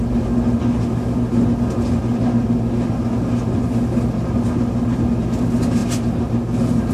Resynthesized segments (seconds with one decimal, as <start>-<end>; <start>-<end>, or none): none